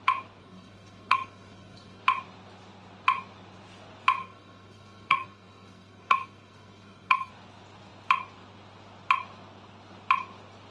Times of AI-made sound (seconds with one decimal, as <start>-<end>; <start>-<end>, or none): 0.4-2.0; 4.2-7.3